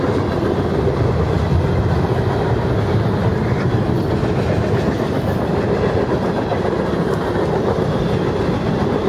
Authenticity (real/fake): real